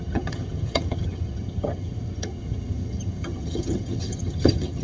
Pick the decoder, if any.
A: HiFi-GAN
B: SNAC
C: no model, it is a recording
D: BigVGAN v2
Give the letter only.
A